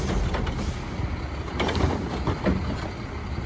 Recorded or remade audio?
recorded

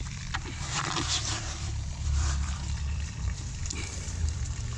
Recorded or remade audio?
remade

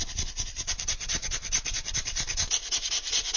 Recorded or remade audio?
recorded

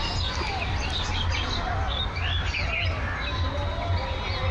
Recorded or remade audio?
recorded